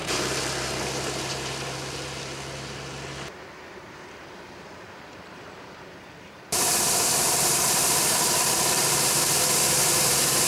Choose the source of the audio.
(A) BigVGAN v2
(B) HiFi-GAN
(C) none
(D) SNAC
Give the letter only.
A